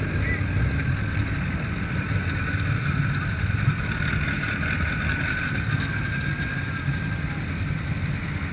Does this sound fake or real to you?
real